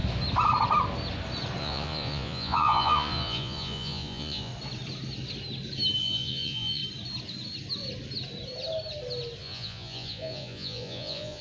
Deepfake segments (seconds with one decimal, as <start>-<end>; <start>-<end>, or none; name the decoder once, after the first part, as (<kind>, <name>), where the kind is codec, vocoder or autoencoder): 1.6-4.5 (vocoder, Vocos); 6.0-6.8; 9.4-11.4